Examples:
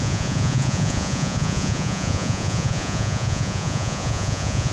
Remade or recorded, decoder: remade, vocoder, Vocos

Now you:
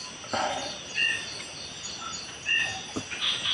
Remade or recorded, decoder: recorded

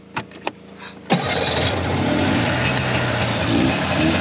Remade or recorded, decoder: recorded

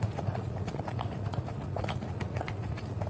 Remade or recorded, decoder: remade, vocoder, Vocos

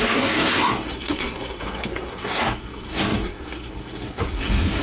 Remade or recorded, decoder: remade, codec, SNAC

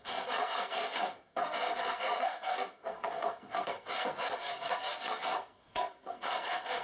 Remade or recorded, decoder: remade, codec, SNAC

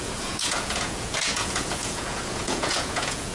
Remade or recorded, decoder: remade, vocoder, Vocos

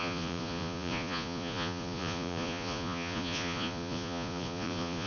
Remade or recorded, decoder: remade, vocoder, Vocos